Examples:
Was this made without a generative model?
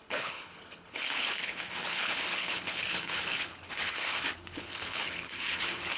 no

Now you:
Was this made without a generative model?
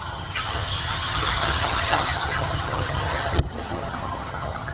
no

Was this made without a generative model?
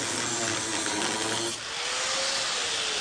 yes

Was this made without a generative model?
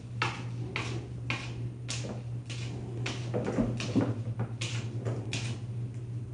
yes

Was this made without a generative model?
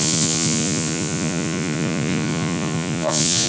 no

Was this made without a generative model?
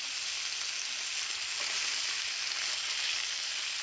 yes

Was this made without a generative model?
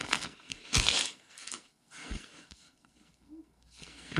no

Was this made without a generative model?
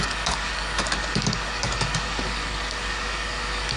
no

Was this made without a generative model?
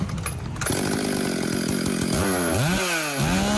yes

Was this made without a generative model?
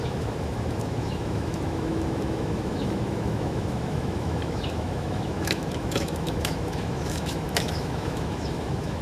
no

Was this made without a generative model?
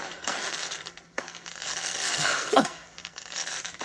no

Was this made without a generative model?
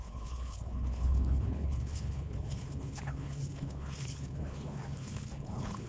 no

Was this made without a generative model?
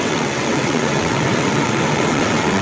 no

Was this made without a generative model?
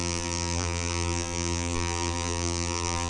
no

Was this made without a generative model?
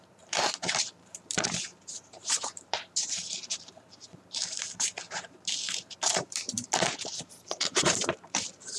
no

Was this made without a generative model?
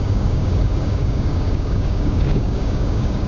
no